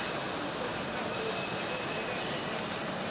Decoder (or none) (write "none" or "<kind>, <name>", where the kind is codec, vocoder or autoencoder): none